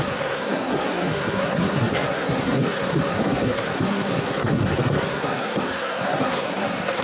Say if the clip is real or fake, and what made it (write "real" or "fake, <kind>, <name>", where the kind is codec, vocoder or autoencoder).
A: fake, codec, SNAC